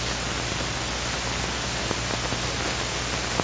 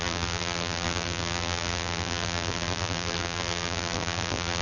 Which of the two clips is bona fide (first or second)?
first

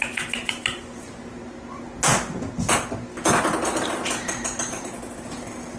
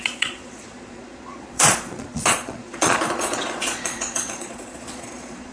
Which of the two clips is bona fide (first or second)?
first